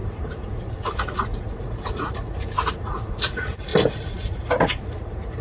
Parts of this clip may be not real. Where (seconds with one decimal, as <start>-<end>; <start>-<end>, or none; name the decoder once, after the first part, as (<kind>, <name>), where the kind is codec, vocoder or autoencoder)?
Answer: 0.0-5.4 (vocoder, Vocos)